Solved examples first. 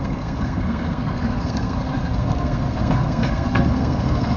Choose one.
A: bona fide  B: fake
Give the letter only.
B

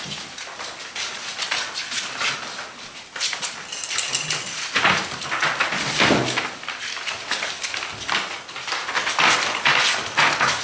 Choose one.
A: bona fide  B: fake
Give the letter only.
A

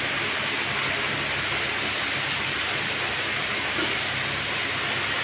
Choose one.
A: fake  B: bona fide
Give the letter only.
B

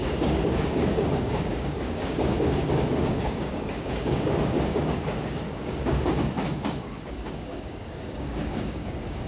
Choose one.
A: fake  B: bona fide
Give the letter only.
A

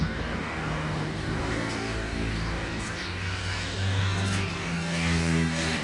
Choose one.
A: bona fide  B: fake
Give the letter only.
B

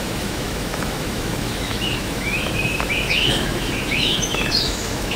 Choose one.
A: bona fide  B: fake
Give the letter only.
B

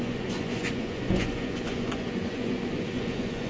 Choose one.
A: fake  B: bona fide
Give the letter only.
A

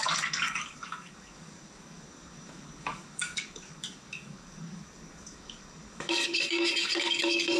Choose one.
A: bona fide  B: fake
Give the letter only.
B